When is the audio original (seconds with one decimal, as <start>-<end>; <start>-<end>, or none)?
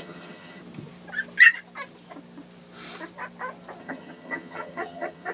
0.6-3.8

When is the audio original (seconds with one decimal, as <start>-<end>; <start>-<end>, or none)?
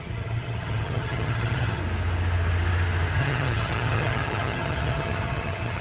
1.8-3.2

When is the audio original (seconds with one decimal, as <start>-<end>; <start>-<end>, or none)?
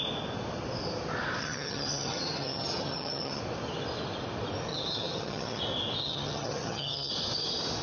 0.0-1.4; 3.4-4.7; 5.6-6.0; 7.1-7.8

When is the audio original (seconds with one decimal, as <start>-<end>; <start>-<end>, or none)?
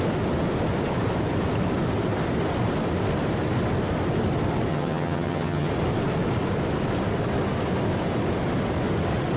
0.0-4.7; 5.7-9.4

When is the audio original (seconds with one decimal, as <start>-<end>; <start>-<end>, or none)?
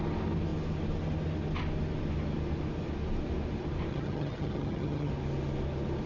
0.0-3.9; 5.1-6.1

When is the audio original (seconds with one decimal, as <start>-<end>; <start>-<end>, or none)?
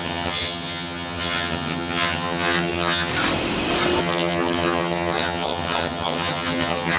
3.1-4.0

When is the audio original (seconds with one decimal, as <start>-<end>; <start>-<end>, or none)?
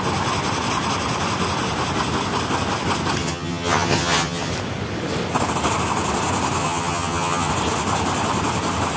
0.0-3.2; 4.5-6.6; 7.5-9.0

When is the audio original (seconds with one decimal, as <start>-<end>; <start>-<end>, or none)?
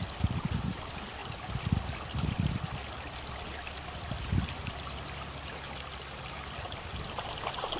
0.0-7.8